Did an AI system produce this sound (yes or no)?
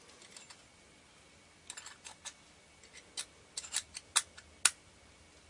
no